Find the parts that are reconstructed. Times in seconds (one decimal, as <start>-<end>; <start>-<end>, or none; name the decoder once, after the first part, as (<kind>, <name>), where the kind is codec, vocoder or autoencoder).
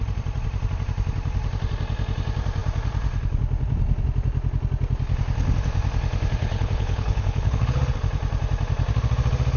6.4-7.8 (codec, HILCodec)